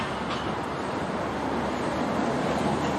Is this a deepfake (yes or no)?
no